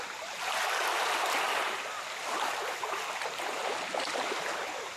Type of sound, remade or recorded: recorded